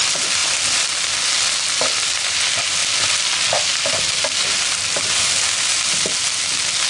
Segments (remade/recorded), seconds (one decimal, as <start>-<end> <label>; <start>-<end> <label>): 0.0-6.9 recorded